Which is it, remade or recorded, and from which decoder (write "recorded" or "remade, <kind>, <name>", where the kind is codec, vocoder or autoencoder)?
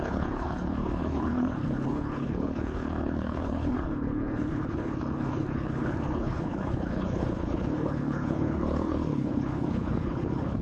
remade, codec, HILCodec